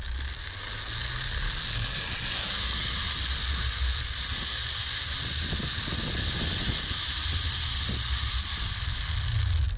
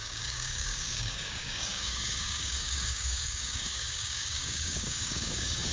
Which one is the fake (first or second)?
second